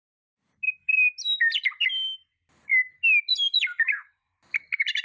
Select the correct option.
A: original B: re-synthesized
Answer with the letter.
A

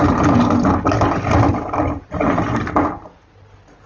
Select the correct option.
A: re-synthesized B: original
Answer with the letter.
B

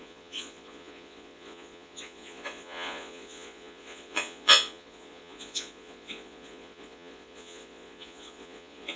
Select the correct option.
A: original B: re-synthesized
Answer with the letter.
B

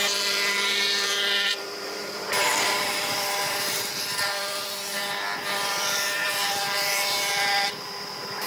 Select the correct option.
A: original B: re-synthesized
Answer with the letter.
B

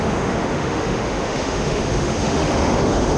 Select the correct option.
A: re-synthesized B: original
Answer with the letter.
A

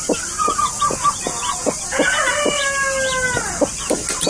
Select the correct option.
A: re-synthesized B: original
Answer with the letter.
B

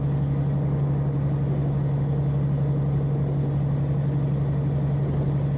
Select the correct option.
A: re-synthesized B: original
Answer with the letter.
B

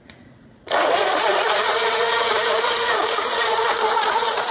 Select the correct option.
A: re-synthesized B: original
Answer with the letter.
A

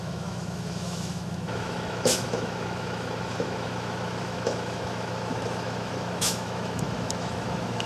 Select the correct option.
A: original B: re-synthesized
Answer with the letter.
B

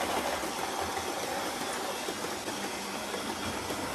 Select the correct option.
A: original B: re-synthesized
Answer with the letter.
A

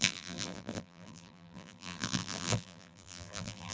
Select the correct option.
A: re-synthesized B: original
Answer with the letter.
A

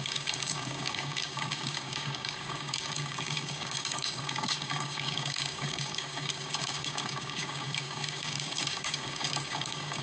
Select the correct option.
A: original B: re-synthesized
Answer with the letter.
B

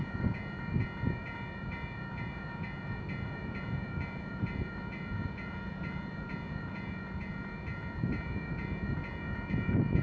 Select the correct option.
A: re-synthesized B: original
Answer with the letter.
A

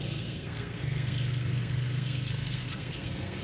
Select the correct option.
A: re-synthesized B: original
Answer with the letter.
A